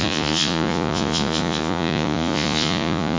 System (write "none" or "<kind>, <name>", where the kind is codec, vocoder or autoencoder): vocoder, Vocos